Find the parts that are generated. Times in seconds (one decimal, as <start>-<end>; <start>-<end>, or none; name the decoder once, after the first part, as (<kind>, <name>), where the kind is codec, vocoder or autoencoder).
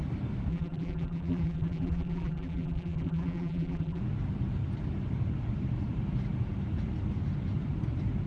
0.5-4.0 (vocoder, BigVGAN v2)